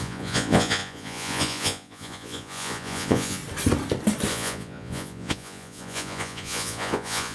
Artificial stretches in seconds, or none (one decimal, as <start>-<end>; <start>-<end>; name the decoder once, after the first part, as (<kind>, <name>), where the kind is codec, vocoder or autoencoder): 0.0-3.4 (vocoder, Vocos); 4.3-7.3